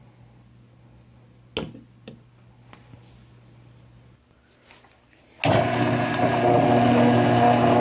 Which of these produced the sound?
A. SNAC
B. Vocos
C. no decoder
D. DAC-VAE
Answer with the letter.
C